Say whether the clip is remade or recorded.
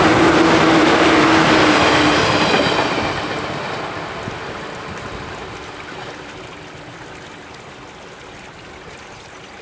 recorded